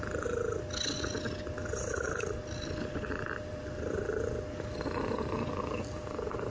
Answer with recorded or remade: recorded